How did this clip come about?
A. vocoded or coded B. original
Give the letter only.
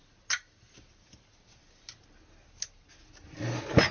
B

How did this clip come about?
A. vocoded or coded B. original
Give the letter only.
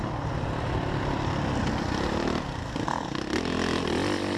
B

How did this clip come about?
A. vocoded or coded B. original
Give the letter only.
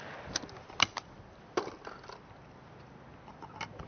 B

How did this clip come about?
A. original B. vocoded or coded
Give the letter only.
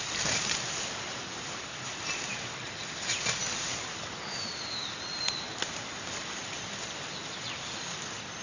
A